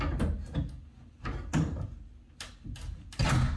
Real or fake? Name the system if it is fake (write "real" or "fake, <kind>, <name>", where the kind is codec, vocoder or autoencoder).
real